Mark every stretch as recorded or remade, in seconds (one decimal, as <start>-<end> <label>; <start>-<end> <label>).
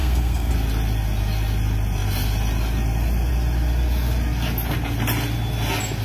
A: 0.0-0.5 remade; 0.5-6.0 recorded